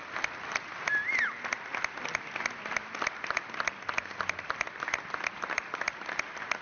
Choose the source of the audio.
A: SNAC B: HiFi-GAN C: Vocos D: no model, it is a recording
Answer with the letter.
D